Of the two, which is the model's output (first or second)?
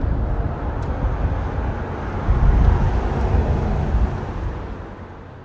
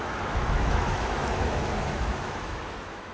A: second